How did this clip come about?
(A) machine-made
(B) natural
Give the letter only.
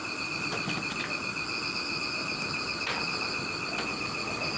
B